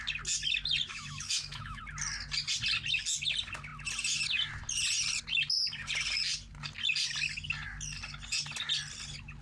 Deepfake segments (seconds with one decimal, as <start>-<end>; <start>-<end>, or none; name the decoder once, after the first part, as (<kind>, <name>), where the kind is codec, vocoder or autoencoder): 0.9-1.8 (autoencoder, DAC-VAE)